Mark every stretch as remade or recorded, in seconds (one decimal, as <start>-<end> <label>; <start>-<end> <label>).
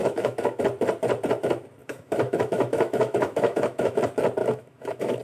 0.0-0.6 remade; 0.6-1.8 recorded; 1.8-4.0 remade; 4.0-4.4 recorded; 4.4-5.2 remade